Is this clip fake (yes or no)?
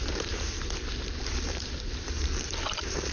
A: yes